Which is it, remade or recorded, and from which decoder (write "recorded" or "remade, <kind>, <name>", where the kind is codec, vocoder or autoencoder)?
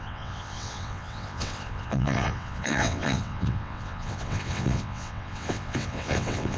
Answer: remade, vocoder, WaveNeXt